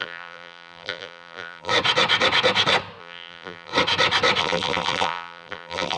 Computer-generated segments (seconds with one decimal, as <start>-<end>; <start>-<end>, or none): 0.0-1.7; 3.0-3.7; 4.4-6.0